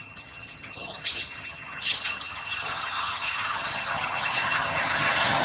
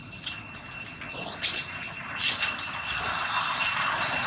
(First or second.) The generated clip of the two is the first